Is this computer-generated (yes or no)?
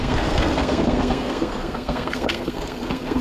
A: yes